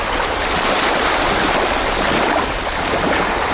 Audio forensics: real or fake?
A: fake